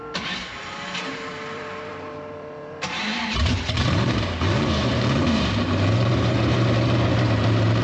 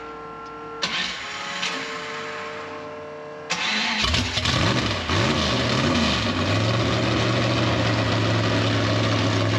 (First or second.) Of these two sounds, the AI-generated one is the first